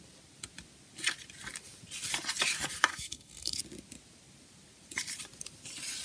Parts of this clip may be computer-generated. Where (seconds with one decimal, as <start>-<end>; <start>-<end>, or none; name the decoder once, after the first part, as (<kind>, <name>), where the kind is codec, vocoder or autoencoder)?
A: 2.9-3.6 (codec, SNAC)